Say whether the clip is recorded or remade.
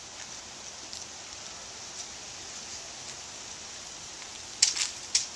recorded